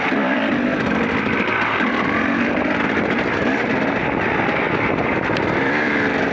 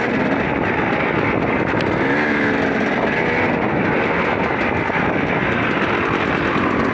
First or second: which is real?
second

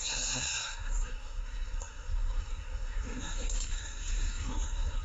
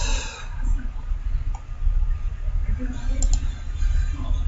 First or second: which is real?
second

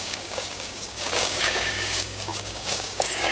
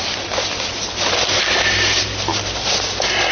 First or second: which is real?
second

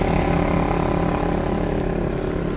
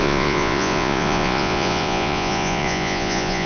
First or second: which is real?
first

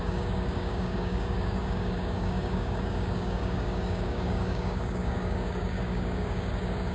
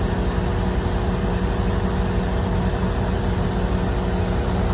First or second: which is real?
second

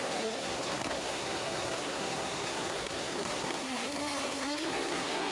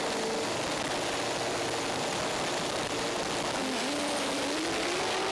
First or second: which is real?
second